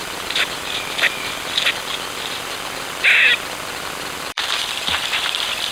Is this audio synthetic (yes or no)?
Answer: yes